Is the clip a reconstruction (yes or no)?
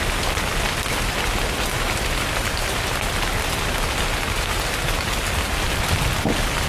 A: no